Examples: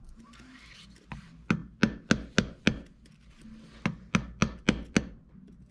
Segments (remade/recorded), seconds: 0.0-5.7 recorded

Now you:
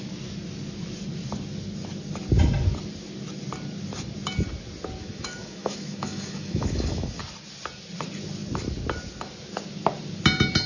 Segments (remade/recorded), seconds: 0.0-5.0 recorded; 5.0-7.2 remade; 7.2-10.7 recorded

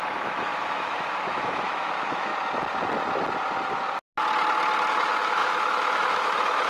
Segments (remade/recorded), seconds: 0.0-2.3 remade; 2.3-4.9 recorded; 4.9-6.7 remade

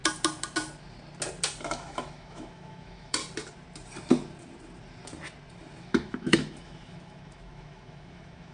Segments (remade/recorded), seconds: 0.0-1.6 recorded; 1.6-3.2 remade; 3.2-5.8 recorded; 5.8-8.5 remade

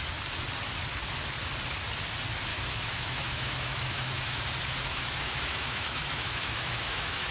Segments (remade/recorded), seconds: 0.0-2.5 recorded; 2.5-4.4 remade; 4.4-4.9 recorded; 4.9-7.3 remade